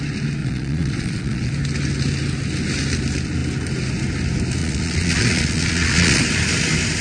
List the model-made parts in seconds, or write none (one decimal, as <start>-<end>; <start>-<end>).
0.4-1.5; 4.6-6.2